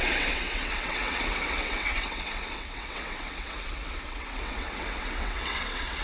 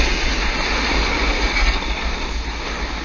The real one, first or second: second